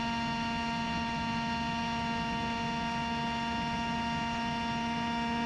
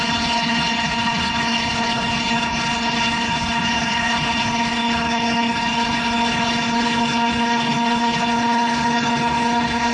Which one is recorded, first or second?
first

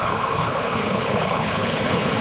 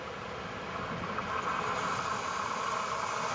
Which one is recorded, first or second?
second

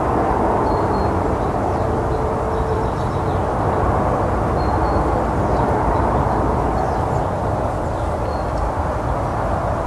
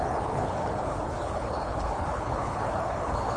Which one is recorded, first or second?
first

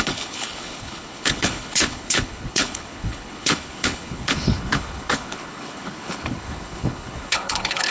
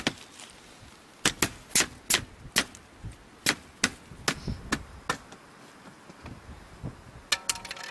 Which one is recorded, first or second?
second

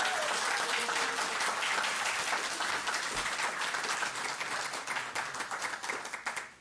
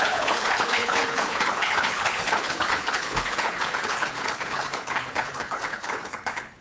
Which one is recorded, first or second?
first